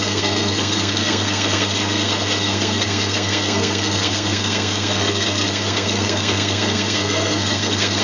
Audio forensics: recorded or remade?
remade